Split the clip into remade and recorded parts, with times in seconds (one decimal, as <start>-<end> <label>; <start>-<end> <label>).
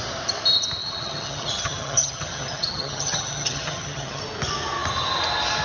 0.0-0.8 recorded; 0.8-4.2 remade; 4.2-5.6 recorded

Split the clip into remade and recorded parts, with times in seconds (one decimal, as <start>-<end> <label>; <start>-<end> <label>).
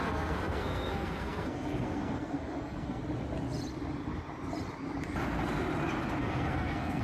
0.0-3.0 remade; 3.0-6.2 recorded; 6.2-7.0 remade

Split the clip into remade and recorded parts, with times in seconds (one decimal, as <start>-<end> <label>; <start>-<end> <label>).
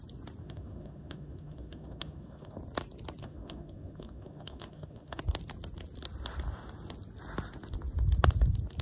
0.0-0.4 recorded; 0.4-2.6 remade; 2.6-3.2 recorded; 3.2-5.2 remade; 5.2-8.8 recorded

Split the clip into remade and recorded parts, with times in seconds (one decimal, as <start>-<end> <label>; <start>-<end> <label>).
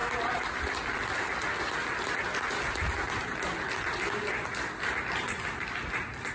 0.0-6.3 recorded